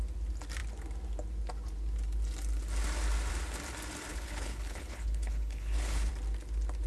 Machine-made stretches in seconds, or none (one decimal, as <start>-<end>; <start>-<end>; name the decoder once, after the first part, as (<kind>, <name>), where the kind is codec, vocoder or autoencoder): 4.1-6.1 (codec, HILCodec)